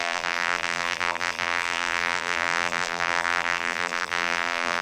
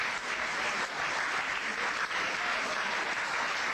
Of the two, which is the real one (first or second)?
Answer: second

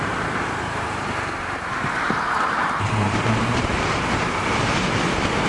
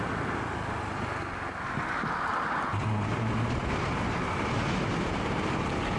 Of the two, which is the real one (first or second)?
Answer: second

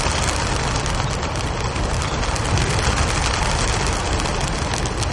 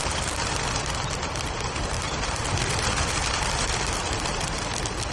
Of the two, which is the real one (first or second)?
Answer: first